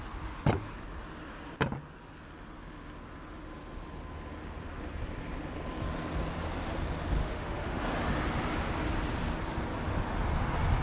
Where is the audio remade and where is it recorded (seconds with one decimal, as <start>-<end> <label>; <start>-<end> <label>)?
0.0-7.2 recorded; 7.2-7.8 remade; 7.8-10.8 recorded